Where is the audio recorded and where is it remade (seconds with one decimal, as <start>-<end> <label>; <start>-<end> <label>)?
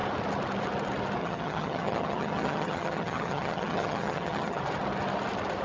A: 0.0-1.2 recorded; 1.2-4.6 remade; 4.6-5.6 recorded